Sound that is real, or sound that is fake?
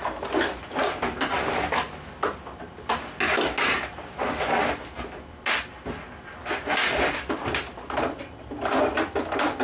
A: real